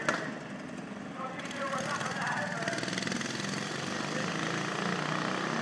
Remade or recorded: recorded